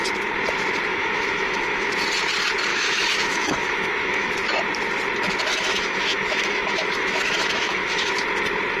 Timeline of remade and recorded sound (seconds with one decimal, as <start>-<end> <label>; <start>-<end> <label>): 0.0-0.9 recorded; 0.9-1.9 remade; 1.9-2.7 recorded; 2.7-4.3 remade; 4.3-5.5 recorded; 5.5-8.1 remade; 8.1-8.8 recorded